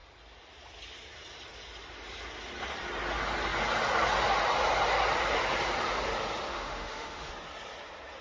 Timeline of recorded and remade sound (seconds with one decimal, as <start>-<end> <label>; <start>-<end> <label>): 0.0-6.5 recorded; 6.5-7.3 remade; 7.3-8.2 recorded